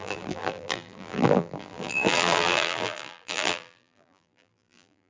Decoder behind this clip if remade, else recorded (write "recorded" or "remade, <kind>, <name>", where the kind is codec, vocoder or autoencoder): remade, vocoder, BigVGAN v2